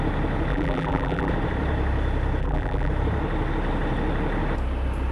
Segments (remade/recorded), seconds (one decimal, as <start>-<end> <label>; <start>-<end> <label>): 0.0-0.5 recorded; 0.5-1.3 remade; 1.3-2.4 recorded; 2.4-2.9 remade; 2.9-5.1 recorded